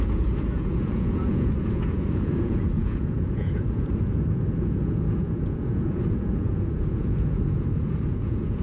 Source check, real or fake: fake